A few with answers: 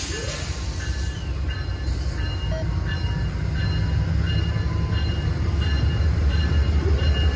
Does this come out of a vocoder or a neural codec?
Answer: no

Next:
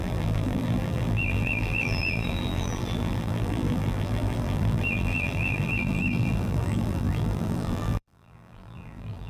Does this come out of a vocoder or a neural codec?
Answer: yes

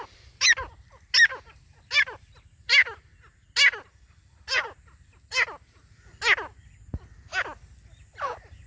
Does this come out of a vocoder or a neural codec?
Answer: no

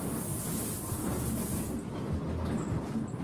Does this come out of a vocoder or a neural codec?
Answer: no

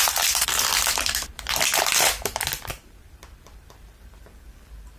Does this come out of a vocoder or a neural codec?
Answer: yes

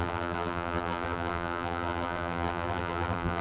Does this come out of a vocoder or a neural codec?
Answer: yes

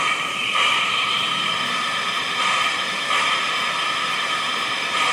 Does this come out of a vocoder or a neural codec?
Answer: yes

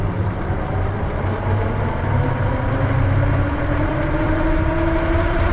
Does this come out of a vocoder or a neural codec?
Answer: yes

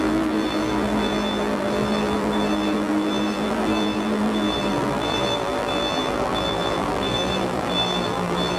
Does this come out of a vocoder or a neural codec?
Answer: yes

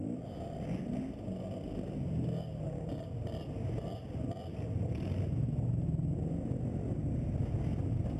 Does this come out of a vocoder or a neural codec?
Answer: no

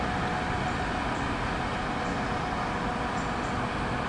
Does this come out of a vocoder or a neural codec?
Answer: no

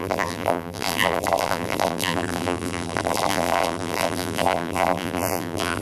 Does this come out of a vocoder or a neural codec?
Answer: yes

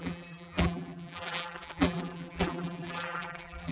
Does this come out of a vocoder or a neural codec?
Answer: yes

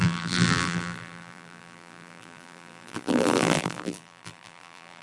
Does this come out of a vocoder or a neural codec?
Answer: yes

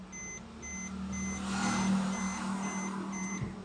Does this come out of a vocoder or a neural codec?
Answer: no